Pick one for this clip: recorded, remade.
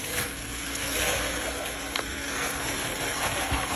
remade